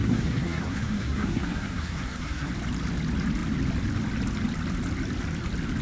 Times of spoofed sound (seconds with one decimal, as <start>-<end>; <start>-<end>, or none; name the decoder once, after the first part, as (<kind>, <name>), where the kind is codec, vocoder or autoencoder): 0.0-2.5 (codec, SNAC)

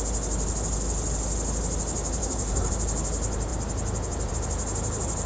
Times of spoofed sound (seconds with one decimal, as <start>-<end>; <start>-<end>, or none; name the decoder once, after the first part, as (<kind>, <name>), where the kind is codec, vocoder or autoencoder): 2.2-2.7 (codec, SNAC)

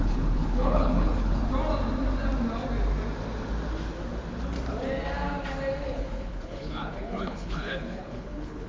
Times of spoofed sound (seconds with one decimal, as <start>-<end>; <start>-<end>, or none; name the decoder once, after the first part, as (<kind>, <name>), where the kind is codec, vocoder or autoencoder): 0.0-1.4 (codec, HILCodec); 5.8-8.7

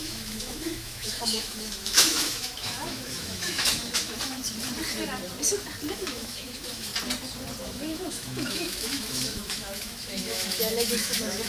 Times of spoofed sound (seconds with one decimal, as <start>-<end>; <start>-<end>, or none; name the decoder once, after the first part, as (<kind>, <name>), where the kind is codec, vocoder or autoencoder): 0.0-4.4 (autoencoder, DAC-VAE); 5.9-6.9; 7.6-11.5

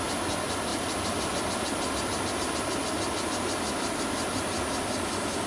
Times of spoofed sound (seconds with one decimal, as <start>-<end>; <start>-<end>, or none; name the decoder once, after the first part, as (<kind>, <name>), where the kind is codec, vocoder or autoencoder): none